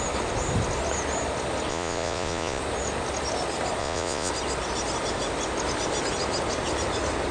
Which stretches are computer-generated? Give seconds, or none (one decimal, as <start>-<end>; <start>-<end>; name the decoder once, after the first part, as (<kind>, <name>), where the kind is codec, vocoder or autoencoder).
1.7-2.6 (vocoder, Vocos); 3.8-4.3